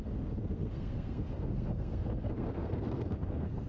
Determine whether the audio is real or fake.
fake